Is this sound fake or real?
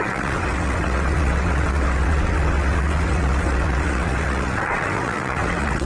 fake